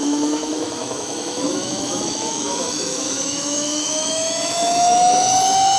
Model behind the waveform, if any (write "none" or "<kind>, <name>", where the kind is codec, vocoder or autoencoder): autoencoder, DAC-VAE